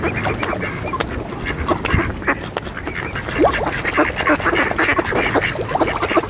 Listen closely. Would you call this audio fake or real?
real